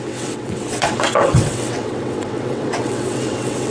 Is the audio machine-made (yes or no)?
yes